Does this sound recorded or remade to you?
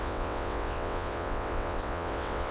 remade